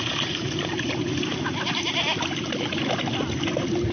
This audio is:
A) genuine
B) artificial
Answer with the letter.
A